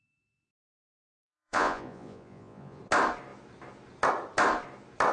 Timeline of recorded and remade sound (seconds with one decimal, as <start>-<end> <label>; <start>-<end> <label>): 0.0-1.1 recorded; 1.1-2.8 remade; 2.8-5.1 recorded